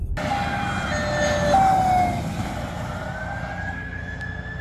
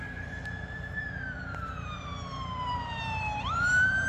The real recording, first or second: first